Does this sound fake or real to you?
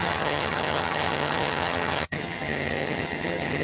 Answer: fake